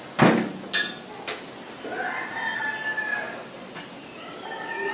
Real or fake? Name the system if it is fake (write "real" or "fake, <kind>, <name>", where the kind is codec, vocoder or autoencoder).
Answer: real